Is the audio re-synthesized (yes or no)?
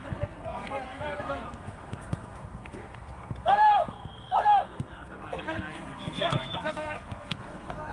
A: yes